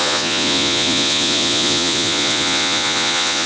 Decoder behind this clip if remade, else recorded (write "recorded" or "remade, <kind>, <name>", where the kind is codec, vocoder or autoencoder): remade, vocoder, Vocos